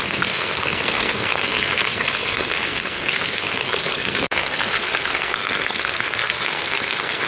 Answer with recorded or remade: remade